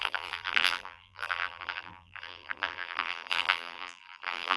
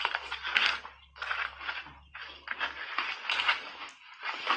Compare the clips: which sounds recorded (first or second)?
second